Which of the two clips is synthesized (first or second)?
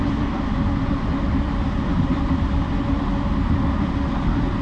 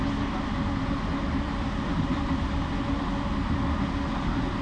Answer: first